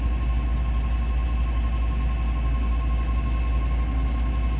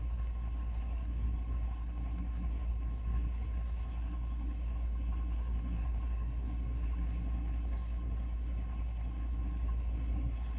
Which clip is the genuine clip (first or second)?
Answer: first